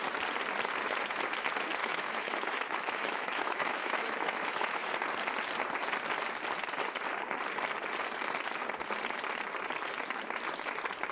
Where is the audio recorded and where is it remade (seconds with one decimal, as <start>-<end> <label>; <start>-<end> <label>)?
0.0-1.8 recorded; 1.8-4.9 remade; 4.9-11.1 recorded